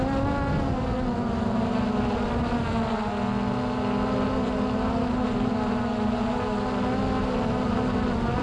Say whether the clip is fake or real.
real